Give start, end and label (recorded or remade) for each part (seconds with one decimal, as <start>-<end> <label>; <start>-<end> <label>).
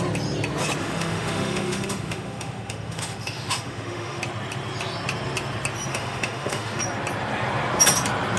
0.0-0.8 recorded; 0.8-4.2 remade; 4.2-5.9 recorded; 5.9-6.8 remade; 6.8-8.4 recorded